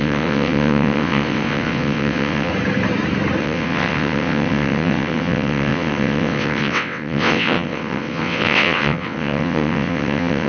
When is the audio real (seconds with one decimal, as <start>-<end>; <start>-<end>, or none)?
2.5-3.4